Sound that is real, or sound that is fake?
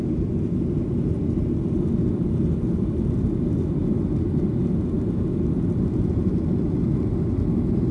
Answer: real